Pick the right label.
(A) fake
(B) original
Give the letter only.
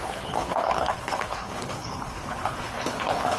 A